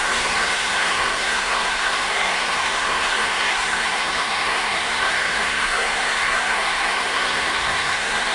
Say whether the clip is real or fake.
fake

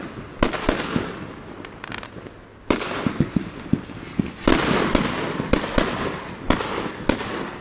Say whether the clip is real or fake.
real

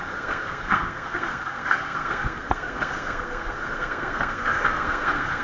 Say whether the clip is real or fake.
fake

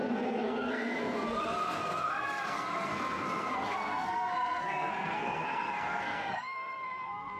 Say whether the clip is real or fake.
fake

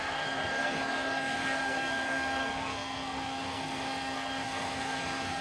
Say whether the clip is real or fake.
fake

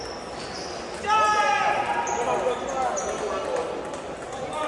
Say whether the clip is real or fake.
real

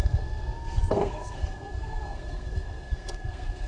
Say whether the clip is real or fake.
fake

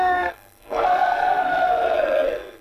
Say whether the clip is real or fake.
fake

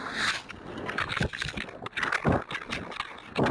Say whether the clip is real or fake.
real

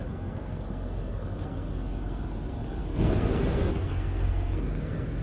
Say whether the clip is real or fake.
fake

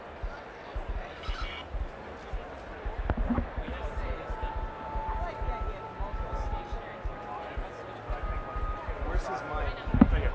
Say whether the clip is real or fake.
real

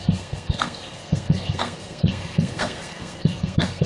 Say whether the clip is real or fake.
fake